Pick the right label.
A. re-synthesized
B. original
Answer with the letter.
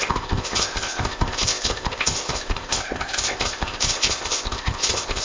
A